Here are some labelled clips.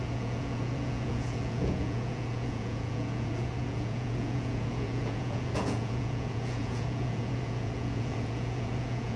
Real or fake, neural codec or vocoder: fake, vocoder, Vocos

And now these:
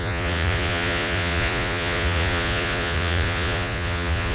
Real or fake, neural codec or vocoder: fake, vocoder, Vocos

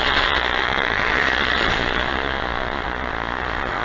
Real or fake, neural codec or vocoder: fake, vocoder, Vocos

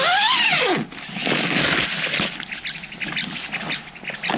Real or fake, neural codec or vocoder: real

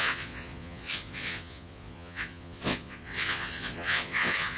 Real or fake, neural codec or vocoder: fake, vocoder, Vocos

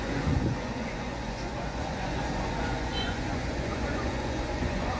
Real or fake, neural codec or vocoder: fake, vocoder, Vocos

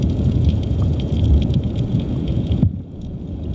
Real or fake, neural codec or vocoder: fake, vocoder, Vocos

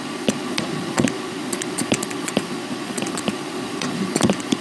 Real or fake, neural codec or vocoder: fake, vocoder, Vocos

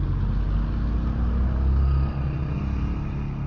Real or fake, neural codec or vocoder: real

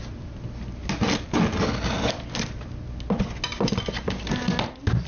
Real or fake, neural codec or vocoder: real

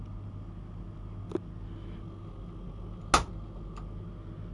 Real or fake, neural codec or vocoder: real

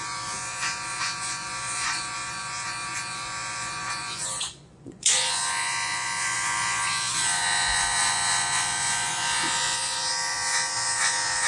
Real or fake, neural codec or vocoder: fake, vocoder, Vocos